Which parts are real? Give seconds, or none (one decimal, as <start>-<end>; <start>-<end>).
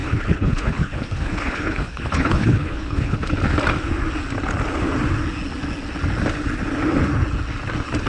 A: 3.3-8.1